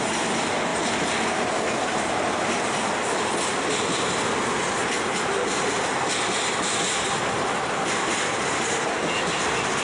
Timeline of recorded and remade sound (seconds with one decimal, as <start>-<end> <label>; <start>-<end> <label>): 0.0-4.8 recorded; 4.8-5.7 remade; 5.7-9.8 recorded